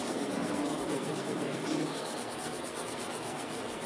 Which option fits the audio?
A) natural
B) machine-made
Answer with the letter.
B